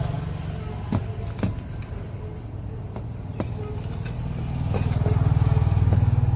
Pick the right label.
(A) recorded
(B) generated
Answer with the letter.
A